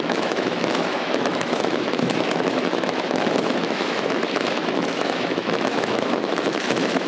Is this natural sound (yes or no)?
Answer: no